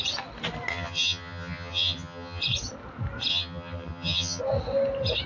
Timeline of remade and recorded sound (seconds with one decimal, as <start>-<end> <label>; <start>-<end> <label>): 0.0-0.7 recorded; 0.7-2.4 remade; 2.4-3.3 recorded; 3.3-4.4 remade; 4.4-5.3 recorded